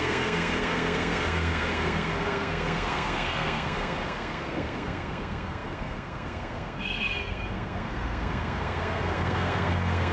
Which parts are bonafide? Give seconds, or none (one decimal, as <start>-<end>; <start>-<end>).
none